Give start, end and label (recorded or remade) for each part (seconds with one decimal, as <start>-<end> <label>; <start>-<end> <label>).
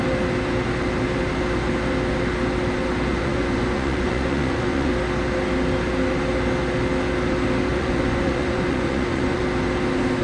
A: 0.0-3.1 recorded; 3.1-4.9 remade; 4.9-7.7 recorded; 7.7-9.4 remade; 9.4-10.2 recorded